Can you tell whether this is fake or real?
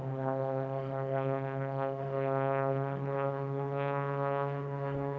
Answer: fake